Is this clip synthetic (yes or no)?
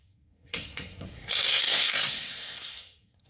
yes